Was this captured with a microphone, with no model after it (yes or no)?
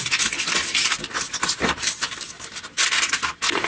yes